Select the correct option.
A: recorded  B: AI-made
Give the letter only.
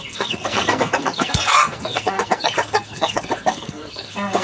B